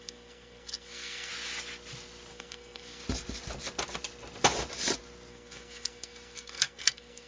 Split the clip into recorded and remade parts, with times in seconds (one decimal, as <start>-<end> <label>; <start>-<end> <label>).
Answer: 0.0-1.3 remade; 1.3-2.3 recorded; 2.3-3.0 remade; 3.0-5.3 recorded; 5.3-7.3 remade